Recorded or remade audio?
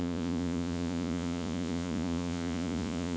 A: remade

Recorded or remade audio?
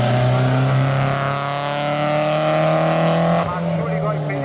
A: recorded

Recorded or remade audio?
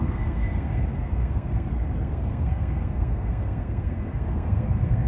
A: remade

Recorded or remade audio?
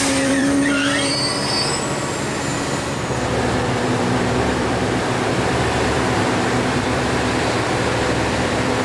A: remade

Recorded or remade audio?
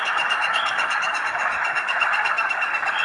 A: remade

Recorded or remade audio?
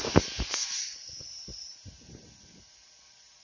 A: recorded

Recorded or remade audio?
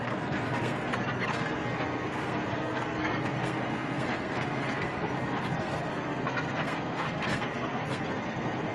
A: remade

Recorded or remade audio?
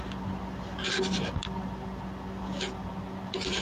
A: recorded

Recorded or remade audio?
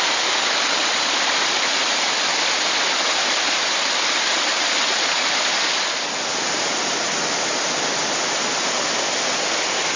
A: recorded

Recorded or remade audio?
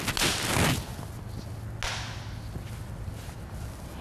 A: recorded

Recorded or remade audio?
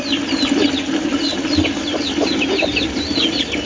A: recorded